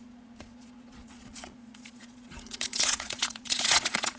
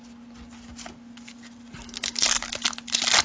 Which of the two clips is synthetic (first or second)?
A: first